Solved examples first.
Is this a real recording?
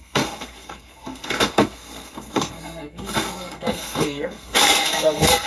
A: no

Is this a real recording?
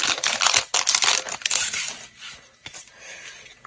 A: yes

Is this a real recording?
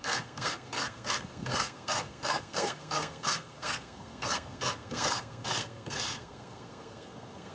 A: no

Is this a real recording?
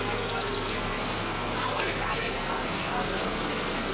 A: no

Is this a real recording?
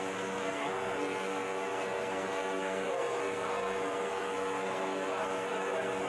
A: no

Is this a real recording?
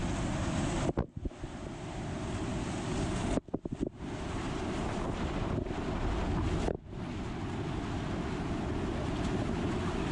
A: yes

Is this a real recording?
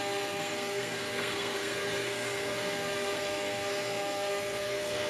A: no